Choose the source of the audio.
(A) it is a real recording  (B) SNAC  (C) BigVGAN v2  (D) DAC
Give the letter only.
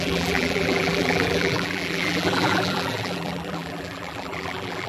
C